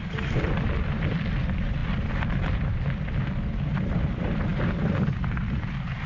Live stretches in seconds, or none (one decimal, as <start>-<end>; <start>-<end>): 1.8-4.1; 4.5-5.6